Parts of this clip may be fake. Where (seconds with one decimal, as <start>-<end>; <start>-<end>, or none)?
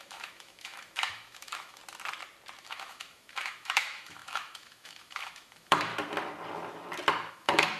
0.0-1.8; 2.6-5.9; 7.3-7.8